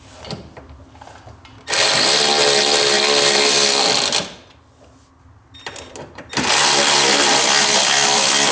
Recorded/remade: recorded